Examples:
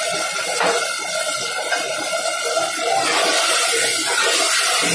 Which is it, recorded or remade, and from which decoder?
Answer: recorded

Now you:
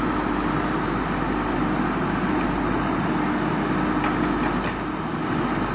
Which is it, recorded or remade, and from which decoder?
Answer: recorded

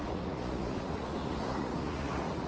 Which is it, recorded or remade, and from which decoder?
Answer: remade, vocoder, Vocos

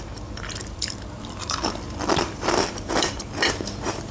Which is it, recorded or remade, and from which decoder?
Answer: remade, vocoder, BigVGAN v2